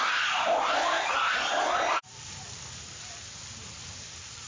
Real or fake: fake